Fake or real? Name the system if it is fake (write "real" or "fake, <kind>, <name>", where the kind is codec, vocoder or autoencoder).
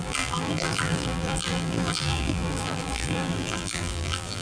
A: fake, vocoder, BigVGAN v2